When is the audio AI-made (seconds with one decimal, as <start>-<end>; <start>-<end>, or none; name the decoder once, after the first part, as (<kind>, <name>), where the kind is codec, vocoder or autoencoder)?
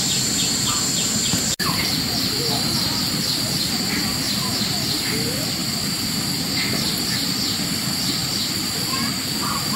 5.6-6.6 (vocoder, BigVGAN v2); 8.2-8.8